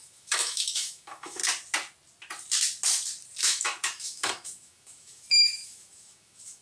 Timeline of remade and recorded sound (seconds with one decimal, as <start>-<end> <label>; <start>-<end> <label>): 0.0-1.4 remade; 1.4-3.4 recorded; 3.4-6.6 remade